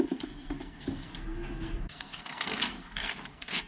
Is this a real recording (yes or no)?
no